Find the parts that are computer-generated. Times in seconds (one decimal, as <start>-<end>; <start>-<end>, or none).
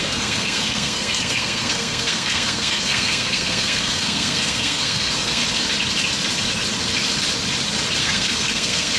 0.0-5.4; 8.0-9.0